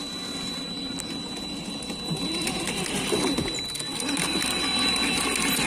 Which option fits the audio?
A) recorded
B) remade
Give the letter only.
A